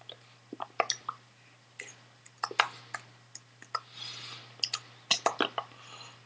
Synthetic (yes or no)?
no